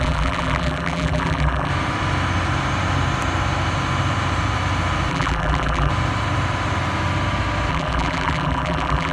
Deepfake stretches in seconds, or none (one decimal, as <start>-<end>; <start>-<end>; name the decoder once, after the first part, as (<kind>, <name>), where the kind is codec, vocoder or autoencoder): 0.0-1.7 (vocoder, BigVGAN v2); 5.1-5.9; 7.7-9.1

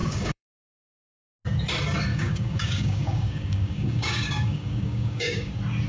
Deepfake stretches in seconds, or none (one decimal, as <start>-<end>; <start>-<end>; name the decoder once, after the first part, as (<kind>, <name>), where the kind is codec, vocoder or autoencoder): 0.0-1.0 (codec, DAC); 2.1-5.5

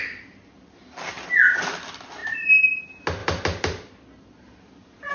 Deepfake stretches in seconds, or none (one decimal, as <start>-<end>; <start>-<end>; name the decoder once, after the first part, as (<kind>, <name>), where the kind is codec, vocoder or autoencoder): none

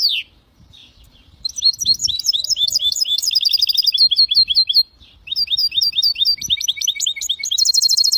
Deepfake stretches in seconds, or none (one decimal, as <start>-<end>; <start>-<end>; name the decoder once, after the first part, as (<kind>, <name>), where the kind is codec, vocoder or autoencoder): 0.8-3.7 (vocoder, BigVGAN v2); 5.6-6.7

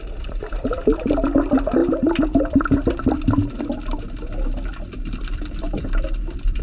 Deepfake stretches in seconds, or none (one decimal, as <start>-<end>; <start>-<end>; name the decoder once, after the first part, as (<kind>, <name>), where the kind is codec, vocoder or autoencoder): 0.0-1.8 (vocoder, BigVGAN v2); 5.8-6.6

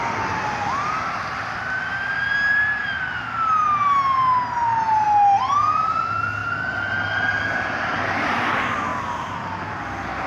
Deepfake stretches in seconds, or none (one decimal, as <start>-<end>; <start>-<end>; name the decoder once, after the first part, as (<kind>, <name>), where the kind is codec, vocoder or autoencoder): none

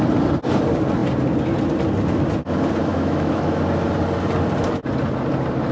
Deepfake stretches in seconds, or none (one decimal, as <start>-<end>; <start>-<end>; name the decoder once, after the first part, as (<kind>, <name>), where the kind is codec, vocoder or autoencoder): 2.9-3.6 (autoencoder, DAC-VAE)

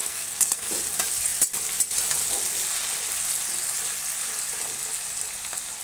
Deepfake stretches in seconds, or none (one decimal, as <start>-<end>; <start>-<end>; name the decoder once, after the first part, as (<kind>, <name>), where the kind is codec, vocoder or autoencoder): 0.0-0.7 (codec, SNAC)